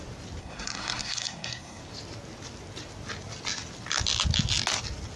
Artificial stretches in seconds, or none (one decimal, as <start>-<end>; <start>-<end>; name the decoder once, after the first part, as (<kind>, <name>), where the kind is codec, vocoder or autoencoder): 0.4-1.8 (codec, SNAC)